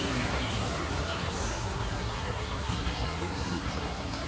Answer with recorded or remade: remade